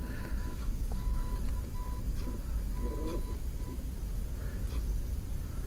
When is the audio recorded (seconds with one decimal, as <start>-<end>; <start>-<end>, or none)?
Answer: 0.0-0.4; 1.3-5.7